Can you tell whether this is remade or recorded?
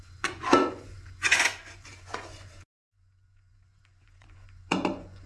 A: remade